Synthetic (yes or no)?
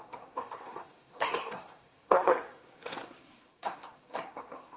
yes